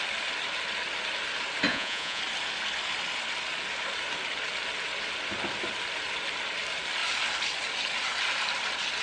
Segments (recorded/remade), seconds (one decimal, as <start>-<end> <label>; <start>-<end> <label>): 0.0-1.7 recorded; 1.7-2.2 remade; 2.2-9.0 recorded